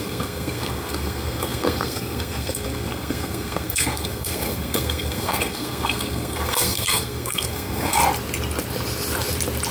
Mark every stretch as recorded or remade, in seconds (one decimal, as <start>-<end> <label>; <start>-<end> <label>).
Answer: 0.0-8.0 remade; 8.0-9.7 recorded